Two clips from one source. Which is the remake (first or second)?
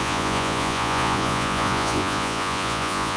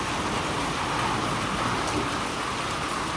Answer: first